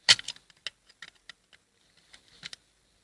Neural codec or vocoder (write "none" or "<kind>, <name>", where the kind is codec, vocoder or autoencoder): none